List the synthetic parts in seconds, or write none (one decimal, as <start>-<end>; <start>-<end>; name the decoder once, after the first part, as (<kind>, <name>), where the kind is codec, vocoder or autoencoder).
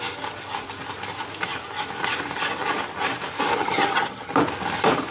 3.5-4.3 (vocoder, HiFi-GAN)